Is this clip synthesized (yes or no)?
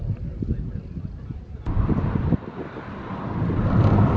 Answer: yes